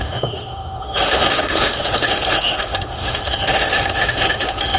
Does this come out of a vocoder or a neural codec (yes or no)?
yes